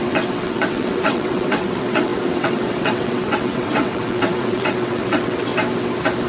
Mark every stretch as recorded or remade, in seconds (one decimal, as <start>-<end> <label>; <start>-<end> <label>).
0.0-5.5 remade; 5.5-6.3 recorded